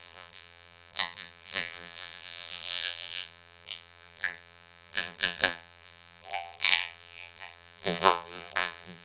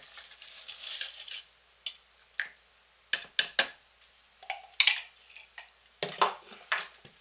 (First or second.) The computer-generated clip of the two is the first